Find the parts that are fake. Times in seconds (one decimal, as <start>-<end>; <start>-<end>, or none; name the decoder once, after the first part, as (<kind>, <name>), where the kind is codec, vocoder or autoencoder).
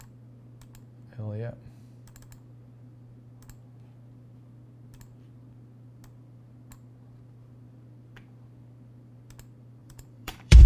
9.8-10.7 (vocoder, BigVGAN v2)